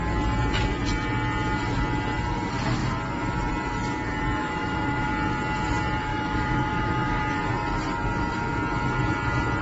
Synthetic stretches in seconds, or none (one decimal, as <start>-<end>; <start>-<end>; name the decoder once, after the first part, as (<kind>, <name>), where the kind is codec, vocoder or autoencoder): 4.4-5.1 (autoencoder, DAC-VAE); 6.1-7.2